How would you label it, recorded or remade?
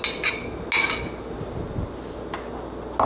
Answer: recorded